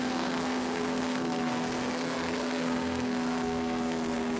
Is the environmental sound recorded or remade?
remade